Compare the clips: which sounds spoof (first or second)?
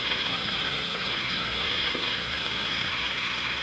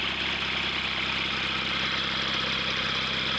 first